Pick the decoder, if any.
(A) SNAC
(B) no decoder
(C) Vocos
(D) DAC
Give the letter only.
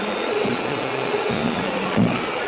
C